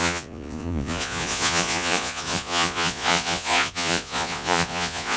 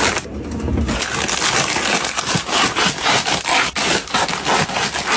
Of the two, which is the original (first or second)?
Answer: second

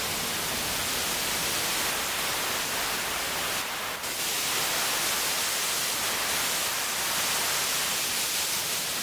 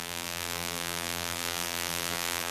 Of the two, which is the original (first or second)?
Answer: first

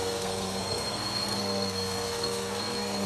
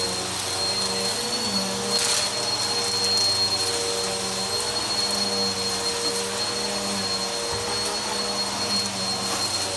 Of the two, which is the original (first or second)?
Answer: second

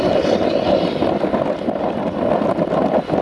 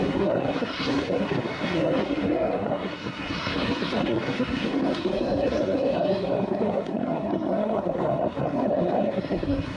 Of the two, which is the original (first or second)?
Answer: first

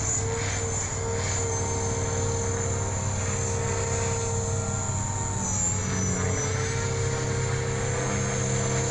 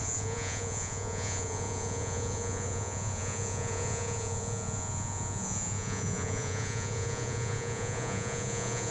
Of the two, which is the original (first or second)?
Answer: first